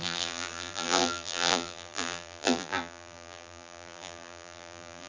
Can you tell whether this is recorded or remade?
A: remade